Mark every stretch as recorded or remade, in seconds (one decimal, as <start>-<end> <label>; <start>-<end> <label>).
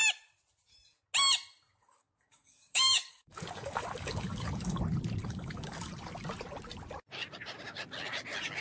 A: 0.0-1.8 recorded; 1.8-4.8 remade; 4.8-5.2 recorded; 5.2-5.9 remade; 5.9-8.6 recorded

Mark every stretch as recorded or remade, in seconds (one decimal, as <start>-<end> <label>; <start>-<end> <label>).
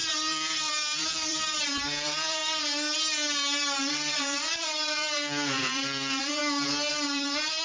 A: 0.0-2.4 remade; 2.4-3.8 recorded; 3.8-6.4 remade; 6.4-6.9 recorded; 6.9-7.6 remade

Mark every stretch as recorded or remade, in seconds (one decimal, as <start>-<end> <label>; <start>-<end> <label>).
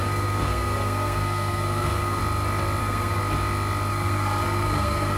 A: 0.0-2.2 remade; 2.2-2.8 recorded; 2.8-3.2 remade; 3.2-3.9 recorded; 3.9-5.2 remade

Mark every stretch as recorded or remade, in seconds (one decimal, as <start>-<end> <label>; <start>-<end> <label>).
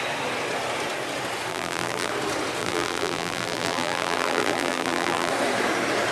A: 0.0-1.5 recorded; 1.5-2.1 remade; 2.1-2.6 recorded; 2.6-5.3 remade; 5.3-6.1 recorded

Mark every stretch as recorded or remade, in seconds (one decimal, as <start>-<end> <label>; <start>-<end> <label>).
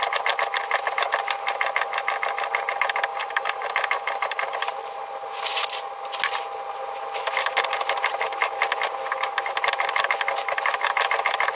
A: 0.0-3.1 recorded; 3.1-4.5 remade; 4.5-11.6 recorded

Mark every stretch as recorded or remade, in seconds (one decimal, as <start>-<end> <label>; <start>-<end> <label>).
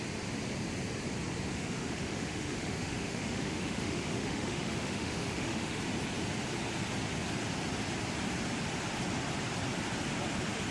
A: 0.0-1.5 recorded; 1.5-5.8 remade; 5.8-10.7 recorded